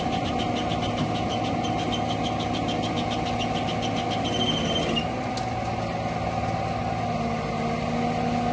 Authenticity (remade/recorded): recorded